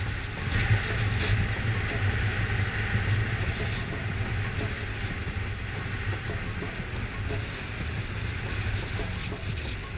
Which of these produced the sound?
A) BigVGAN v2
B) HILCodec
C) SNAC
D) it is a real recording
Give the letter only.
D